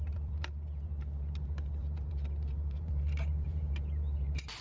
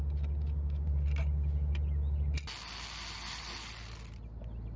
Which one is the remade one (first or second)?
first